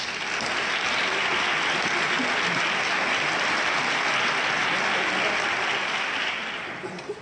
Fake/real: real